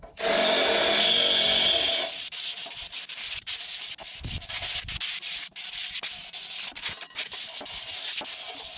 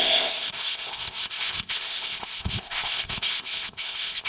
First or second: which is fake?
second